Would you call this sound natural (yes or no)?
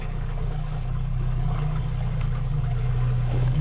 no